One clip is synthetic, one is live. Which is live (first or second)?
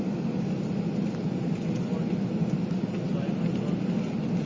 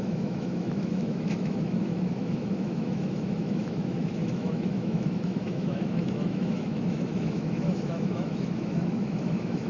first